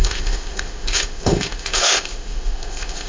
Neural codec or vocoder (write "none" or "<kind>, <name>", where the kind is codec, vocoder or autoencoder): codec, ZipCodec